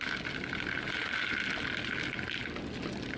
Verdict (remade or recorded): recorded